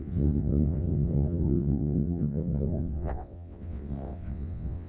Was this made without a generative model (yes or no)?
no